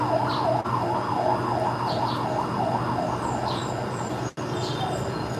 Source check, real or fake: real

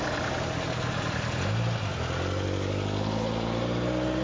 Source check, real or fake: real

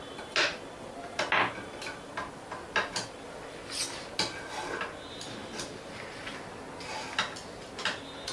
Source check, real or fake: real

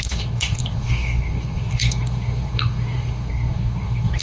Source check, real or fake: fake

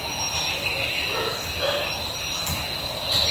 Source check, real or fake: real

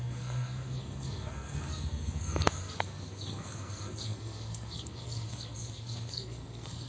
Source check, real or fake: fake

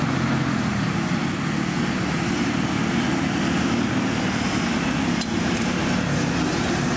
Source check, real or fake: real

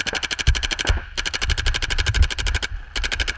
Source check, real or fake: real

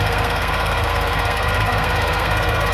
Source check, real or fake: fake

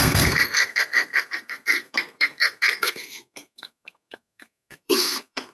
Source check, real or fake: fake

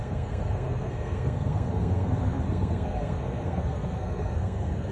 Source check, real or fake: fake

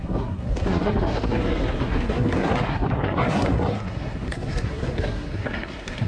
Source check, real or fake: fake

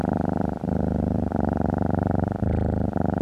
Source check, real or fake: real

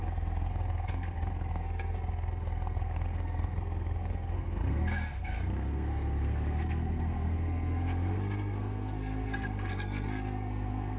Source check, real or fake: fake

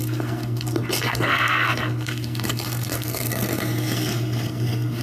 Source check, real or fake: fake